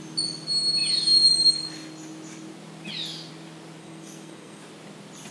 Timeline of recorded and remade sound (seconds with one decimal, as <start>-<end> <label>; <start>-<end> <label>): 0.0-3.8 recorded; 3.8-4.6 remade; 4.6-5.3 recorded

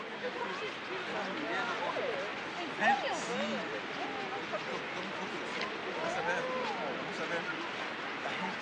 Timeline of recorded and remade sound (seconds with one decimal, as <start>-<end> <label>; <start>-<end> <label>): 0.0-8.6 recorded

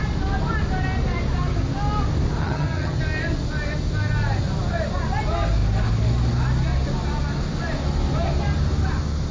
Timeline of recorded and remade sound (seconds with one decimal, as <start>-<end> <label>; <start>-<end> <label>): 0.0-2.4 recorded; 2.4-3.0 remade; 3.0-9.3 recorded

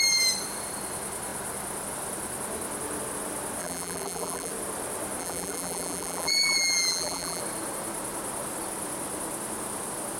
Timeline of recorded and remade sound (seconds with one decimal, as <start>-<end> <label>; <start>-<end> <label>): 0.0-3.6 recorded; 3.6-4.5 remade; 4.5-5.2 recorded; 5.2-7.4 remade; 7.4-10.2 recorded

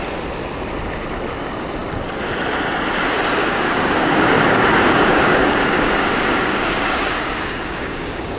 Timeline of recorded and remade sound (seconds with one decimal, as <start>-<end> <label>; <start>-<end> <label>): 0.0-3.4 recorded; 3.4-8.4 remade

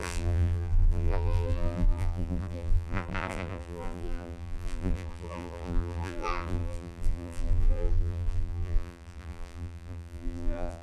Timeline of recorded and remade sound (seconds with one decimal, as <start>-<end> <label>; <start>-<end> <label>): 0.0-10.8 remade